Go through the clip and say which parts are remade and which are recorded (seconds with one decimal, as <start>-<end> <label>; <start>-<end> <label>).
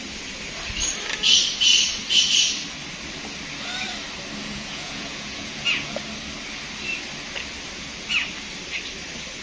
0.0-4.4 recorded; 4.4-6.0 remade; 6.0-9.4 recorded